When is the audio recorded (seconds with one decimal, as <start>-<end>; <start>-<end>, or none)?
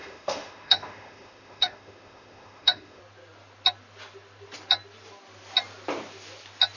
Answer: 3.0-6.8